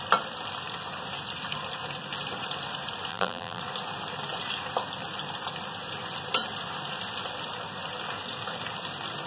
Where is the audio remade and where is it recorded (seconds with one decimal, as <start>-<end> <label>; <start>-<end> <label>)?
0.0-3.1 recorded; 3.1-3.6 remade; 3.6-9.3 recorded